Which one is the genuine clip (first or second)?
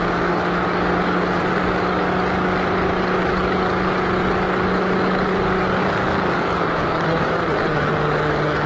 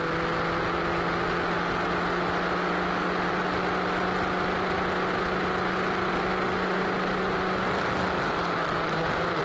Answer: second